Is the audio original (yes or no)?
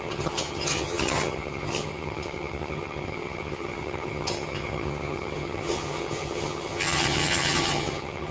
no